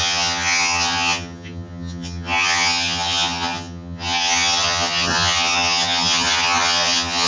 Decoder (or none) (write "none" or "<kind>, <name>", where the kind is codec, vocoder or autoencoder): vocoder, HiFi-GAN